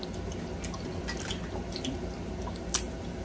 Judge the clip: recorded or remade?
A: recorded